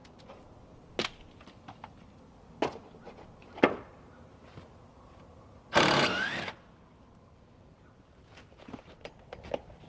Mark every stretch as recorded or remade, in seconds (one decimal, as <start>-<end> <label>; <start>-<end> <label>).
0.0-9.9 recorded